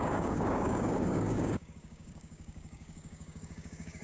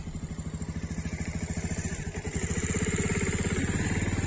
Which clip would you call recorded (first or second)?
second